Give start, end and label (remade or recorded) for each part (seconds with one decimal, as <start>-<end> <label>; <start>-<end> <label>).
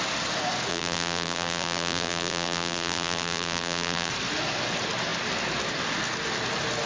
0.0-0.7 recorded; 0.7-4.1 remade; 4.1-6.9 recorded